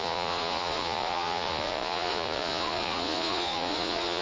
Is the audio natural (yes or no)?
no